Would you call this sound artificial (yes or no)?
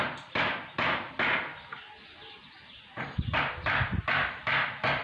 no